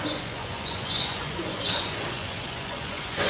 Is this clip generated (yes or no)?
yes